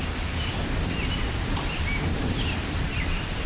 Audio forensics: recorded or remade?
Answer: remade